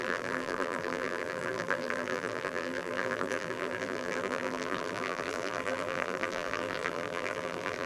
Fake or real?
fake